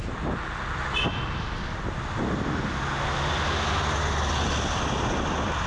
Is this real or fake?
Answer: real